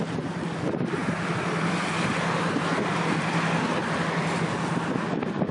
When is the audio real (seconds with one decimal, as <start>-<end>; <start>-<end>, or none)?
0.0-1.0; 1.9-5.5